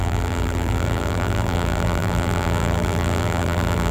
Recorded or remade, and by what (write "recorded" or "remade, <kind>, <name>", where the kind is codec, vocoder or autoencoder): remade, vocoder, BigVGAN v2